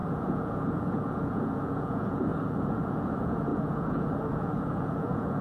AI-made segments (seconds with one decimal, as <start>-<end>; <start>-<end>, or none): 0.0-5.4

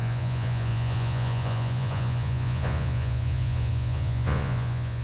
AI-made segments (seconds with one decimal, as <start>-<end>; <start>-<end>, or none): 0.0-5.0

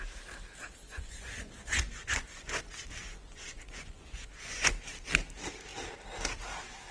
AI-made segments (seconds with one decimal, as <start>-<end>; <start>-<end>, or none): 0.8-2.6; 3.0-4.7